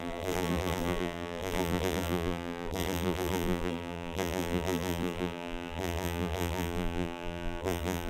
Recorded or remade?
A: remade